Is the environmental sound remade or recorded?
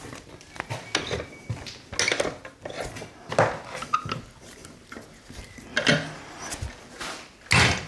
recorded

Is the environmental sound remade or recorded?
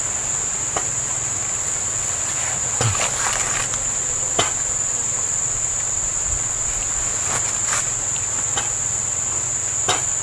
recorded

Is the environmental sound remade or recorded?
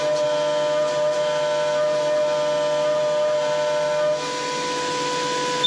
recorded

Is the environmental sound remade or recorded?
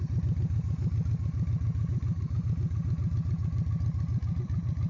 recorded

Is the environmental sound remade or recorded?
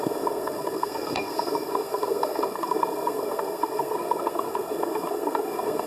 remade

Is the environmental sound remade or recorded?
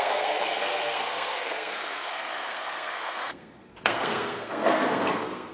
remade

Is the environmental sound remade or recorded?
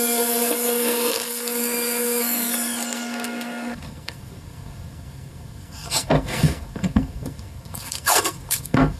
remade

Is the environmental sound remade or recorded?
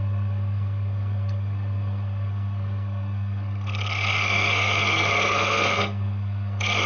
remade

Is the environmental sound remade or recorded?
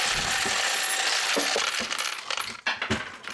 recorded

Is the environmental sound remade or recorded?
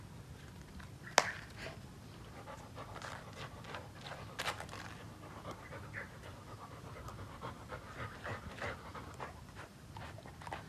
recorded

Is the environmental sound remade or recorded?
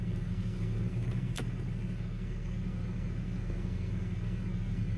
remade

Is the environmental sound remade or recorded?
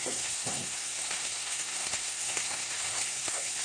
remade